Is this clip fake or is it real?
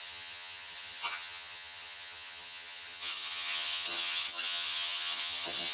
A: fake